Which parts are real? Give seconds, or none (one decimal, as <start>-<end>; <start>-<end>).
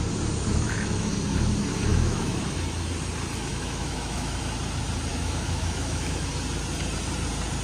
0.0-0.5; 1.1-1.9; 2.5-3.5; 4.4-5.1; 6.3-7.6